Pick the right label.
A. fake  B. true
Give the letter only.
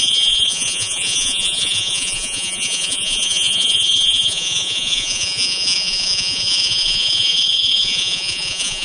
A